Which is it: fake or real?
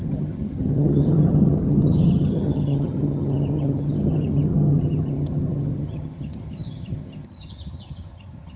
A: fake